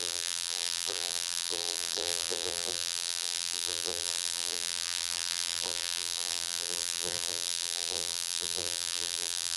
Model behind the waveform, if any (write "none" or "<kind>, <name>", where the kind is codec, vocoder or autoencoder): vocoder, BigVGAN v2